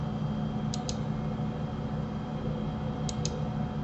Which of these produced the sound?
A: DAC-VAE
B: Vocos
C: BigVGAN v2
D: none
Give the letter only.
D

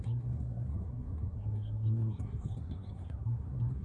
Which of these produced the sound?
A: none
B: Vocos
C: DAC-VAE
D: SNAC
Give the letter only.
D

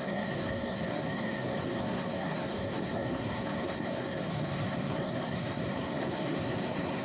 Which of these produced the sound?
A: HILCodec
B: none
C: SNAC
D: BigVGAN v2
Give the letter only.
C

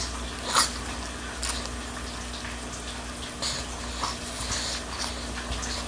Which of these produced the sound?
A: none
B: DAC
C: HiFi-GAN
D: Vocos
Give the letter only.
A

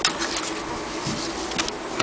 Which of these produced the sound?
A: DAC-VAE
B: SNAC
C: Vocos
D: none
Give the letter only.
D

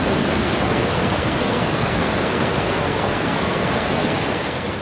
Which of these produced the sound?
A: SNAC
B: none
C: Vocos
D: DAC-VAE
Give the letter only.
A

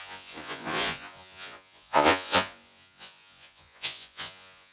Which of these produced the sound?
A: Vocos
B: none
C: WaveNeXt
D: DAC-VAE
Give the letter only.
A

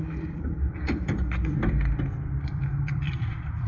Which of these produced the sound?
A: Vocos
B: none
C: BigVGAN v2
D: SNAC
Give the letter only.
C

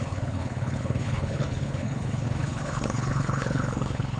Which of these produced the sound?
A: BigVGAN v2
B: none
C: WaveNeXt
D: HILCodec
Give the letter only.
D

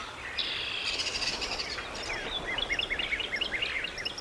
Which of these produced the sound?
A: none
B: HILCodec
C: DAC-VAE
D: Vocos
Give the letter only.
A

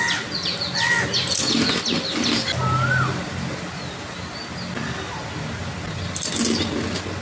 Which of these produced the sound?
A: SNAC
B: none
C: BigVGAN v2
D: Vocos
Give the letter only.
B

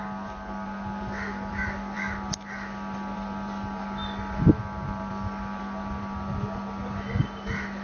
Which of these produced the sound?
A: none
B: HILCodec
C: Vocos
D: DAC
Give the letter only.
A